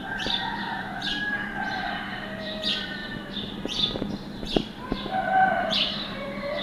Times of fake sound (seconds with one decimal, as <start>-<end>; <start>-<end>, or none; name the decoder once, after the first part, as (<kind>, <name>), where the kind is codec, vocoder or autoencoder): 0.0-3.0 (vocoder, BigVGAN v2); 4.1-6.6

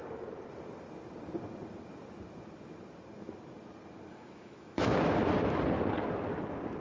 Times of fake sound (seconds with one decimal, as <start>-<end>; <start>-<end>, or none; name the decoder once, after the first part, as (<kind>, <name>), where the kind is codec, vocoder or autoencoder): 4.1-4.9 (autoencoder, DAC-VAE)